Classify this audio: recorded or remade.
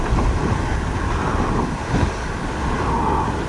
recorded